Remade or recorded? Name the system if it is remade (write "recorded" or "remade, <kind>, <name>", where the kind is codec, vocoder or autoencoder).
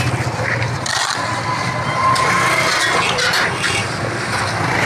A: recorded